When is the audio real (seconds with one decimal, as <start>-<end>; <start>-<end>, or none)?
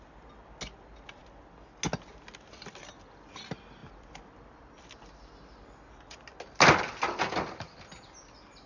0.0-3.8; 4.8-8.7